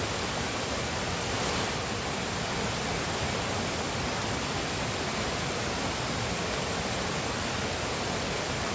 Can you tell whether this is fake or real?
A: real